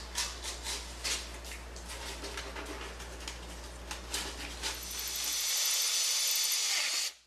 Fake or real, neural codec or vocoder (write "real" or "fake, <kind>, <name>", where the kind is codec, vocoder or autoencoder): real